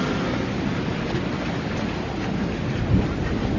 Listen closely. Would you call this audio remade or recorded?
recorded